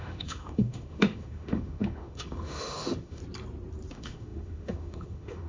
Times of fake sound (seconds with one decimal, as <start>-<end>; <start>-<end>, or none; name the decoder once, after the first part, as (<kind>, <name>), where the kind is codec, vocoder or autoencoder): 0.0-3.2 (autoencoder, DAC-VAE); 3.9-5.5